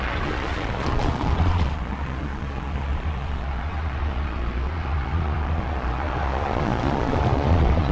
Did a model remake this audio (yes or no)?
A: yes